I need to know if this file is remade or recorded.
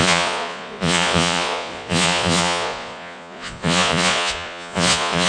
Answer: remade